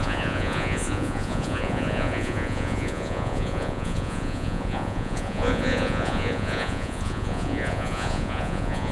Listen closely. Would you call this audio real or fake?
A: fake